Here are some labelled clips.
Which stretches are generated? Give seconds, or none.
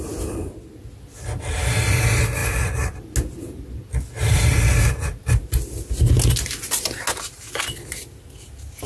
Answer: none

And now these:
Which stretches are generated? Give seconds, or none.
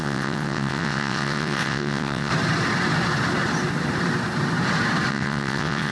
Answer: 0.0-2.3; 5.1-5.9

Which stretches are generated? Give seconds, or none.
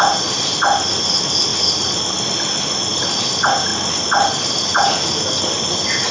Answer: none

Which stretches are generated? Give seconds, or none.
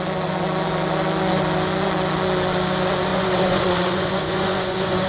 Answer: 3.1-5.1